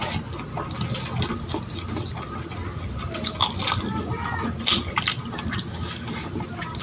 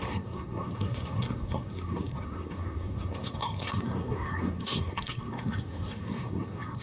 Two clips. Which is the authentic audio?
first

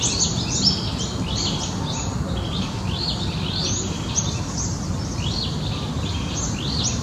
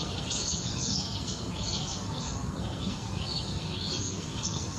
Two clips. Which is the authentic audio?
first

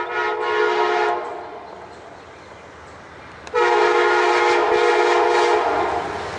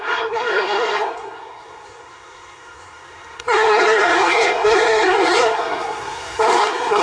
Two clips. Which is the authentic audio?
first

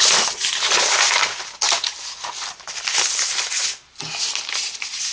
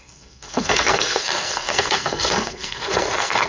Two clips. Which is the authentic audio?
first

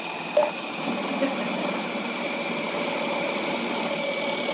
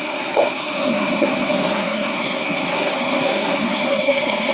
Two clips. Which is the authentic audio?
first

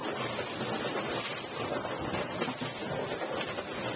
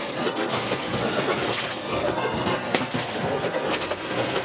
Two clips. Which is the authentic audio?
first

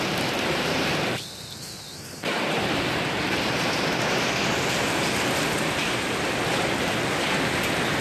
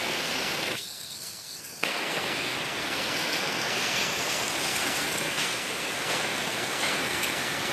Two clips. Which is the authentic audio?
first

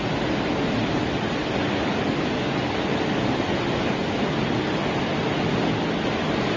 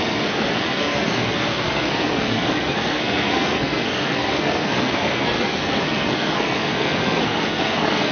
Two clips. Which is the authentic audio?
first